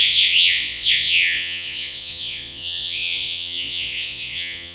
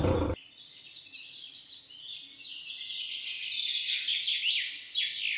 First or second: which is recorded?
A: second